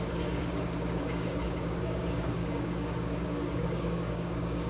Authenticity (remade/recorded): remade